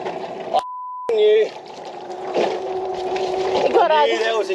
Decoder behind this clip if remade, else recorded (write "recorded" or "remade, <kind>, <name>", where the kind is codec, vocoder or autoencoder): recorded